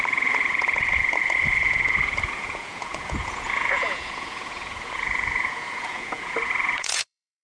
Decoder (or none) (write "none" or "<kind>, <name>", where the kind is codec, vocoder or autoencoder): vocoder, Vocos